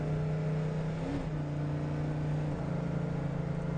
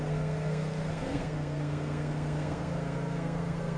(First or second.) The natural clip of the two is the first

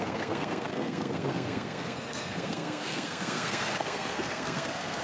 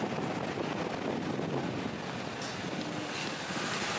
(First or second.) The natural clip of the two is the second